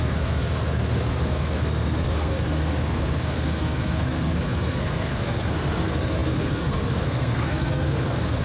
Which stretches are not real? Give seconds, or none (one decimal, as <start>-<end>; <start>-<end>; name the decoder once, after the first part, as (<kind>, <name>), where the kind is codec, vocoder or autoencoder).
0.0-8.4 (codec, SNAC)